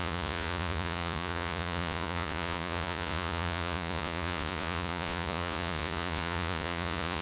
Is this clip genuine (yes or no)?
no